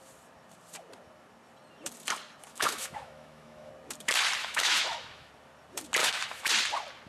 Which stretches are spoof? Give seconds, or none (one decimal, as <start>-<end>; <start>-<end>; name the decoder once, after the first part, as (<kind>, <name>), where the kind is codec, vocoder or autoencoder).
2.5-3.7 (autoencoder, DAC-VAE); 4.4-5.3; 6.0-6.5